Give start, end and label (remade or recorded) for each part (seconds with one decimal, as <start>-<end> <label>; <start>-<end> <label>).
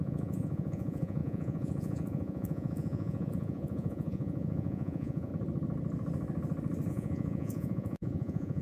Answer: 0.0-5.3 remade; 5.3-6.9 recorded; 6.9-8.6 remade